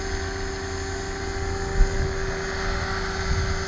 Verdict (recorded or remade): recorded